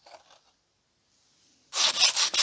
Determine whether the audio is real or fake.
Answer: real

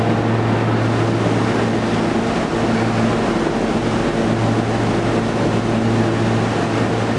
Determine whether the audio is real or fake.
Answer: real